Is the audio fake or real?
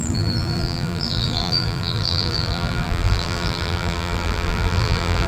fake